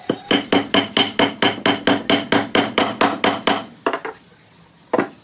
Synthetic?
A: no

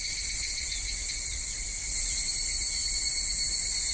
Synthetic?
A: no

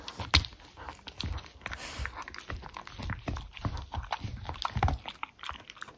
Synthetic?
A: no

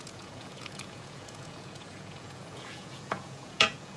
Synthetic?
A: yes